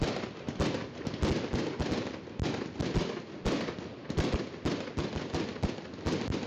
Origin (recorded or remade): recorded